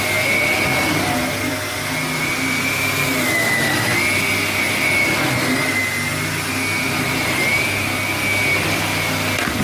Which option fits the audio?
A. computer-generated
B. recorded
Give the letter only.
B